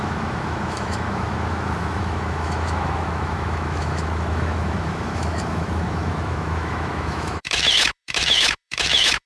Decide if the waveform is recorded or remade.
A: remade